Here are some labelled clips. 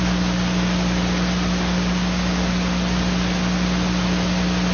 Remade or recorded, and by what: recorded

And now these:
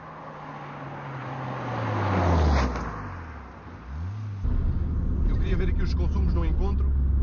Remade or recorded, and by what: recorded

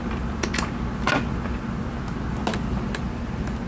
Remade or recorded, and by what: recorded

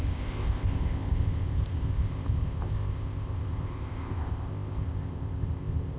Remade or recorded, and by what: remade, codec, ZipCodec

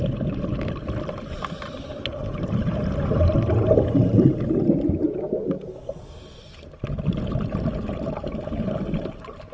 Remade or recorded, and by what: recorded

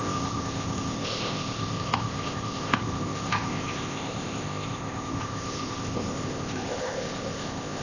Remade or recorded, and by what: remade, codec, ZipCodec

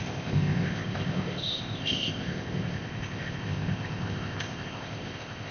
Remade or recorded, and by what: remade, codec, ZipCodec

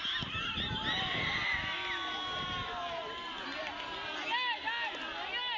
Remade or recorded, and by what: recorded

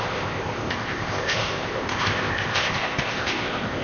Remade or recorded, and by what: remade, codec, ZipCodec